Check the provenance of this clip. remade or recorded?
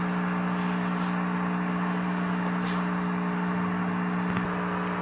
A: recorded